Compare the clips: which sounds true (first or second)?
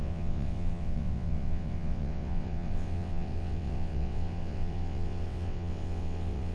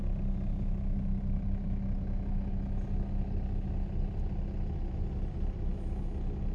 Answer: second